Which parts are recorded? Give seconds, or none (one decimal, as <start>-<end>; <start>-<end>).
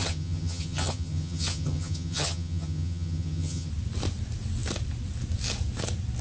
3.7-6.2